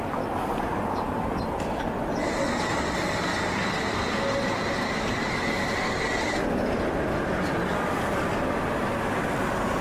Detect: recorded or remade recorded